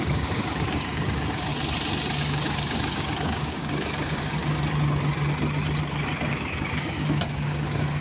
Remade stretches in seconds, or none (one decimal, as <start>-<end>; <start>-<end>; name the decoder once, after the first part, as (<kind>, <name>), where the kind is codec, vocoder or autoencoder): 0.0-1.5 (codec, DAC); 2.2-4.4; 6.3-8.0